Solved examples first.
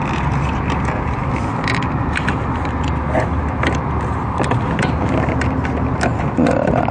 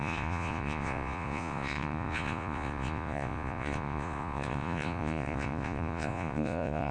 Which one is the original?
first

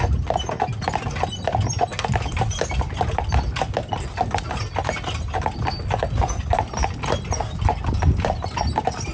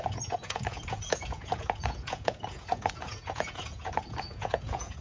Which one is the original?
first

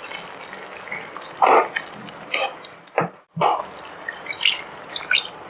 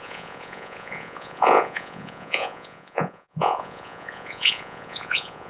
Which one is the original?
first